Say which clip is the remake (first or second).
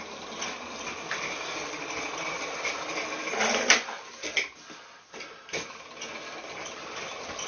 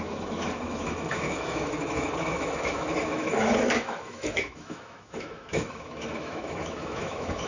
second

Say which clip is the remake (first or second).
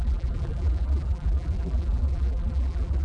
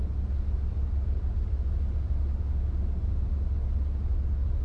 first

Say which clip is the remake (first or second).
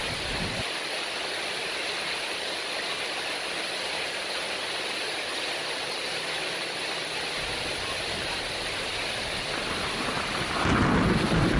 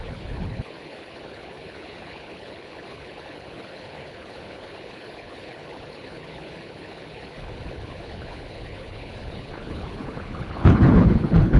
second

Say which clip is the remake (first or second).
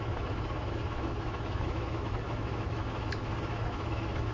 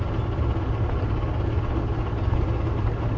first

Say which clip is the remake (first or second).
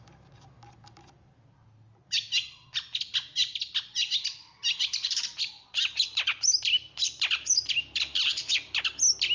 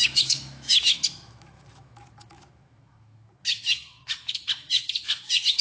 second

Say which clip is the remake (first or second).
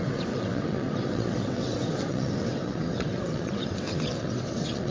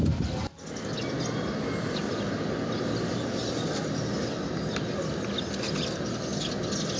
first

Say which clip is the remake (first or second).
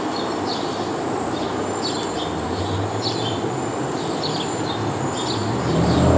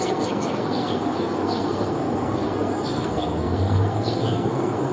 second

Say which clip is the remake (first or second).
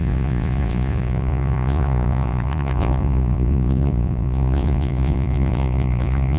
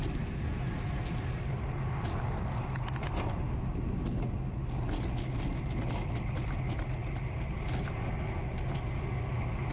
first